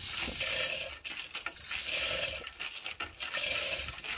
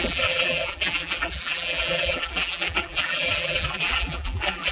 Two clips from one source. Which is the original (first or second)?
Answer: first